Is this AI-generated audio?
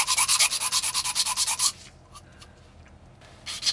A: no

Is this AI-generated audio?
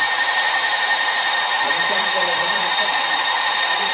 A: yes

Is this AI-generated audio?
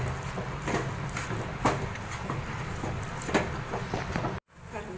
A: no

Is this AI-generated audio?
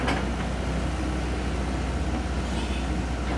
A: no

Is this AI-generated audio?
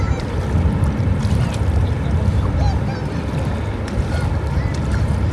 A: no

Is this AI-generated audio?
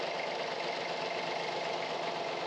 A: no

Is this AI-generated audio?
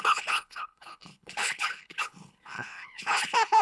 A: yes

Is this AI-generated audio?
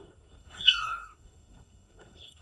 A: yes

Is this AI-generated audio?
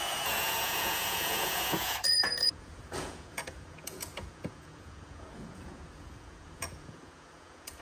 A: yes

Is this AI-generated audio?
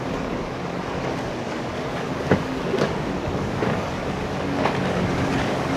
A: yes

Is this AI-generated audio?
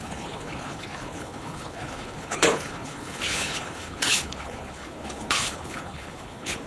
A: yes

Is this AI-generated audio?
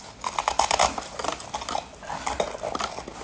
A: no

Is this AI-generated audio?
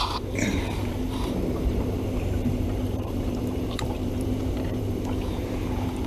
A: yes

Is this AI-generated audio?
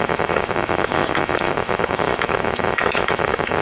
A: yes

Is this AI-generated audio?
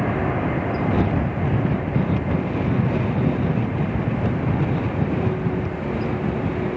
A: no